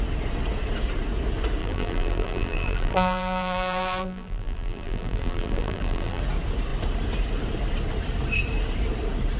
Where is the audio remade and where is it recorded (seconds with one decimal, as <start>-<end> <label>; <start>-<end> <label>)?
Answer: 0.0-1.6 recorded; 1.6-6.2 remade; 6.2-9.4 recorded